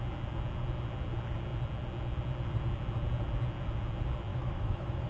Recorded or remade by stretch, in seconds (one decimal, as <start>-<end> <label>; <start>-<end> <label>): 0.0-4.3 recorded; 4.3-5.1 remade